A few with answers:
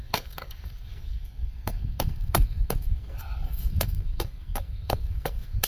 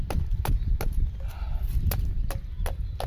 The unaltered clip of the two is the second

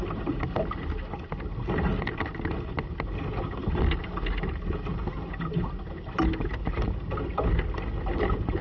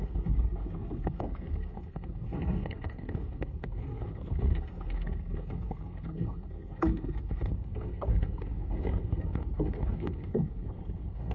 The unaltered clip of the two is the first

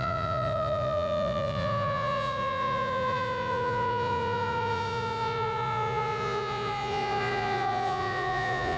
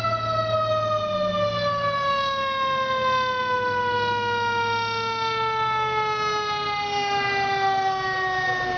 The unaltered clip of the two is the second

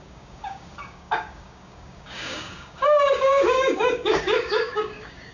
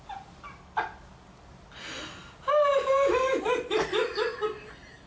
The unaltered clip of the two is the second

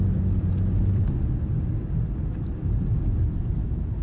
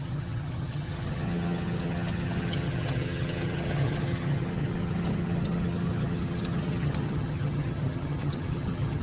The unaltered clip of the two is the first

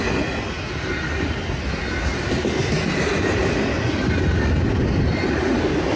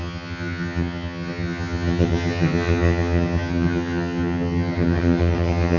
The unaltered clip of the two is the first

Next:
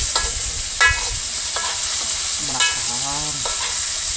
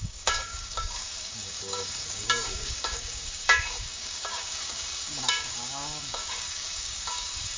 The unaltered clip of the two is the first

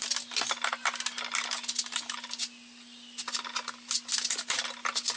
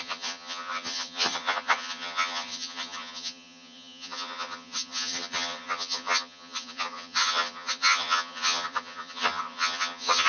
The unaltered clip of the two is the first